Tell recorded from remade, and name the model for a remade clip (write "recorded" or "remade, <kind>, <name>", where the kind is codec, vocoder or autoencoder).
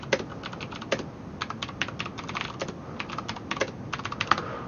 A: recorded